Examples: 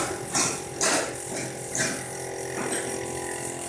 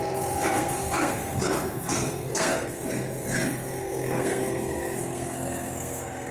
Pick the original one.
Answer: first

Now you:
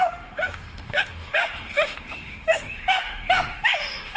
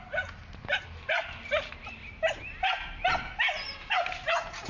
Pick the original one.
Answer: second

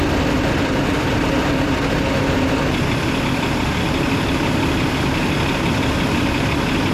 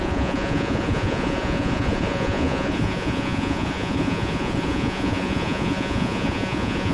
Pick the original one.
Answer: first